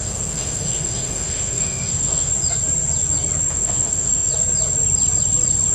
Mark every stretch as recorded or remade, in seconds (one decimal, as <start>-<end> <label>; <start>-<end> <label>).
0.0-2.3 remade; 2.3-3.5 recorded; 3.5-4.3 remade; 4.3-5.7 recorded